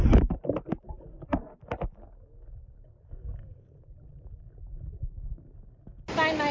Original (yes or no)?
yes